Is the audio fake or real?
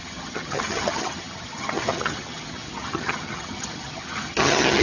fake